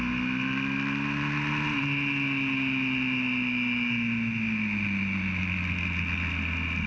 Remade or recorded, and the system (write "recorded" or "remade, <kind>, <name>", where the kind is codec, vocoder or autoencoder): recorded